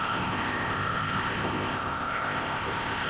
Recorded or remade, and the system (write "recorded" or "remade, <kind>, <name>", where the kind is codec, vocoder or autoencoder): remade, codec, ZipCodec